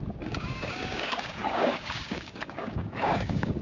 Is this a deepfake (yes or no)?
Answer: yes